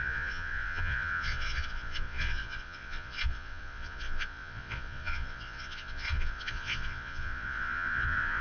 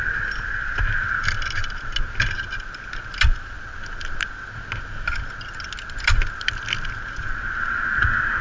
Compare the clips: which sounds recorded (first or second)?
second